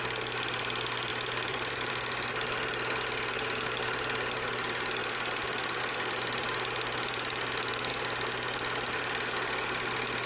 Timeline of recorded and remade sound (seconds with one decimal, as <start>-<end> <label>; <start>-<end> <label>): 0.0-1.1 recorded; 1.1-1.9 remade; 1.9-7.9 recorded; 7.9-8.9 remade; 8.9-10.3 recorded